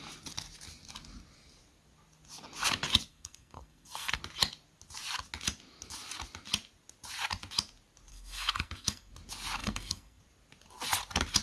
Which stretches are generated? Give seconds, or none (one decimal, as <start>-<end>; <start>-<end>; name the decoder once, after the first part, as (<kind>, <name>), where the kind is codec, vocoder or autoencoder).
3.1-4.2 (codec, SNAC); 8.1-9.1; 9.6-10.2